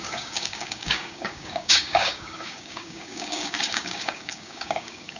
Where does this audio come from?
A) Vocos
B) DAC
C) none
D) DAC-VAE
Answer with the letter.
B